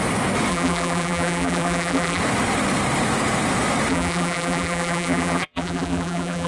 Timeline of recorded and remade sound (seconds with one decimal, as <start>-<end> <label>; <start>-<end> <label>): 0.0-0.5 recorded; 0.5-2.2 remade; 2.2-3.9 recorded; 3.9-6.5 remade